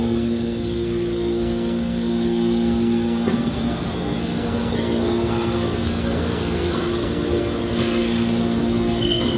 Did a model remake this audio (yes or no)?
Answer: yes